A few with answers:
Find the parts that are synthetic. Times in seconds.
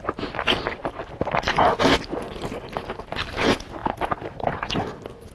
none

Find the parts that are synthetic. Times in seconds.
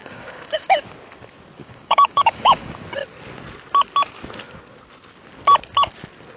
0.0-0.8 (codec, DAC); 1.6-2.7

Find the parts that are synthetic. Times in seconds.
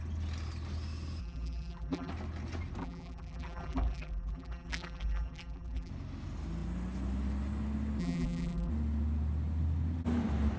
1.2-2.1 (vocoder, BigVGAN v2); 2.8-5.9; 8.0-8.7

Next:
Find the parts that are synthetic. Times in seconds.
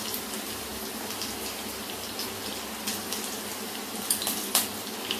none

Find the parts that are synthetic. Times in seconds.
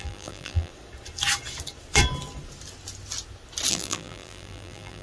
0.0-0.7 (vocoder, BigVGAN v2); 3.7-5.0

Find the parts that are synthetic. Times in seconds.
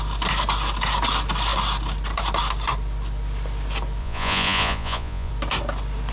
4.0-5.3 (vocoder, Vocos)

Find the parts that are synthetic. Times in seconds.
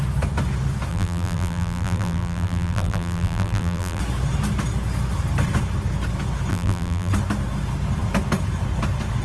0.9-4.0 (vocoder, BigVGAN v2); 6.5-7.1